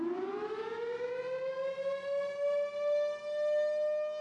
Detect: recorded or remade recorded